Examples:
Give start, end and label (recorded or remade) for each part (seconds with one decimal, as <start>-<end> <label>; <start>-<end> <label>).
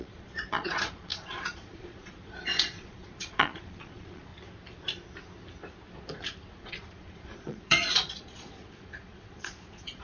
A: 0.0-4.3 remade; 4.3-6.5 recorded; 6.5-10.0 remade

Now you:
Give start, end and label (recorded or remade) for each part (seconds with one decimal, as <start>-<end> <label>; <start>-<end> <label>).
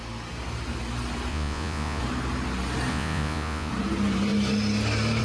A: 0.0-1.3 recorded; 1.3-2.0 remade; 2.0-2.9 recorded; 2.9-3.7 remade; 3.7-5.2 recorded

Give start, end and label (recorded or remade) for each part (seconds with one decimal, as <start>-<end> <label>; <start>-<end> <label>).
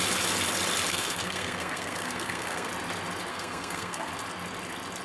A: 0.0-0.9 recorded; 0.9-2.7 remade; 2.7-3.3 recorded; 3.3-4.1 remade; 4.1-5.0 recorded